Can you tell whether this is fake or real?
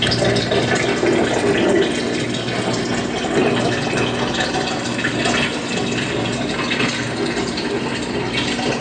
real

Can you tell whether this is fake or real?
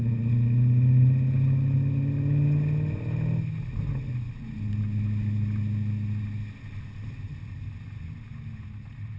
real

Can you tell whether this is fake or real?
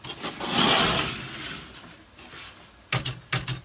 real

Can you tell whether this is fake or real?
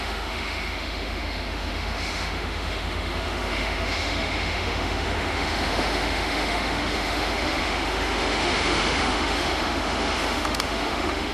fake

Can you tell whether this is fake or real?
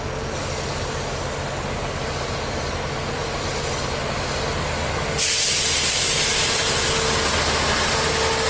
real